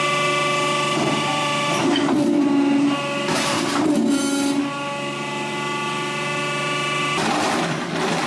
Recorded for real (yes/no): yes